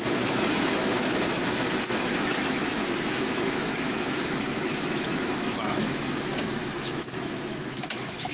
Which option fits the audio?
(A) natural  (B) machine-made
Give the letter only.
B